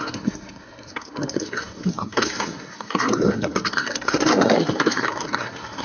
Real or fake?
fake